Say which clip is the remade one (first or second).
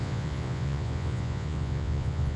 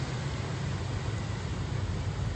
first